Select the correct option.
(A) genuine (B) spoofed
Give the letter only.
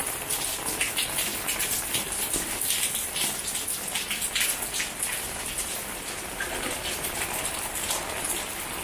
A